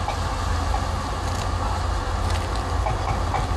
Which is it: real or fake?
real